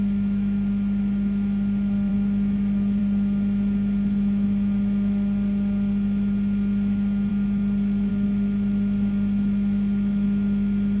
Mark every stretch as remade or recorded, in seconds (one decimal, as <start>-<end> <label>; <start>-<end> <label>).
0.0-11.0 recorded